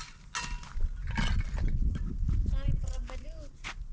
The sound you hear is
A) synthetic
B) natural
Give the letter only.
B